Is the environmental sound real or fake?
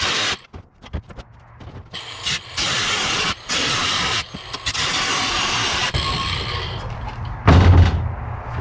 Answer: real